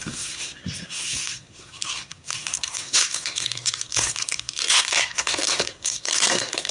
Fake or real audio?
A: fake